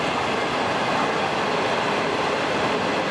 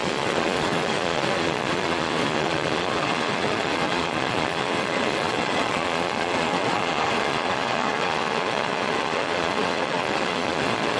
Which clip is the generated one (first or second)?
second